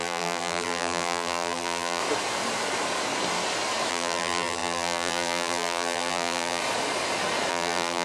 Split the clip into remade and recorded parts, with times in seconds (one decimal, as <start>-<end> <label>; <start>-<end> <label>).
0.0-2.0 remade; 2.0-3.9 recorded; 3.9-6.6 remade; 6.6-7.5 recorded; 7.5-8.0 remade